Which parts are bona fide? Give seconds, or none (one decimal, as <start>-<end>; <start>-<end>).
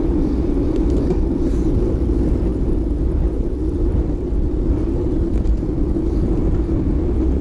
0.0-7.4